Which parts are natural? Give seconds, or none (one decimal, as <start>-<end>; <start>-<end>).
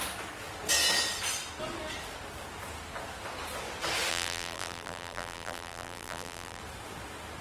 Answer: 0.0-4.1; 6.6-7.4